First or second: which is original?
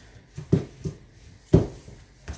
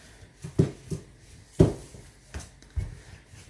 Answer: second